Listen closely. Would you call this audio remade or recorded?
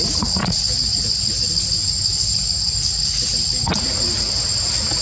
recorded